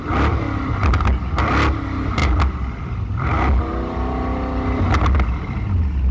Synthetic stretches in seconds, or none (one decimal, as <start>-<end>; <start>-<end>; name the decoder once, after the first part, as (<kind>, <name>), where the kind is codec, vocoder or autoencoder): none